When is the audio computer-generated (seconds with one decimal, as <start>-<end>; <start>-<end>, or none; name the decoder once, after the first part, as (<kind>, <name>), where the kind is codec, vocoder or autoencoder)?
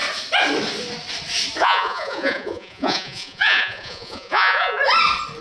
1.6-4.8 (vocoder, Vocos)